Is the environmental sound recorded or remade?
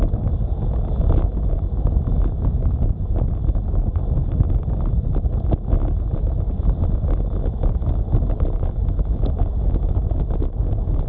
recorded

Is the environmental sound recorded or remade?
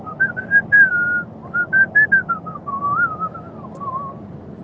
recorded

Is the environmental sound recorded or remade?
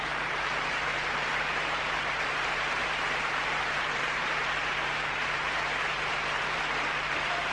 remade